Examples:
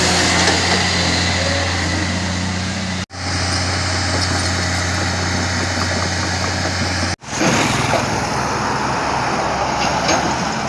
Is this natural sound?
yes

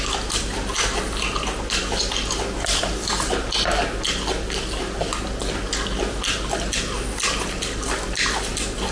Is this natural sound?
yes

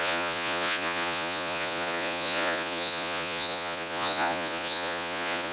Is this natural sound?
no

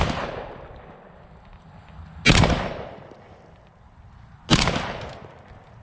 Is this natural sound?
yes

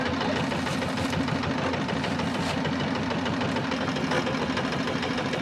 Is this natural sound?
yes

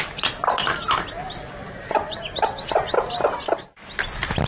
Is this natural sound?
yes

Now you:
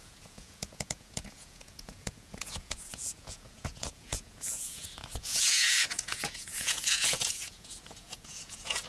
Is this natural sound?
no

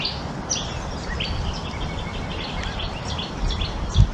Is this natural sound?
yes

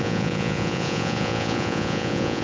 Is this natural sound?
no